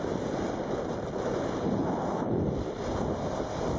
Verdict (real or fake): real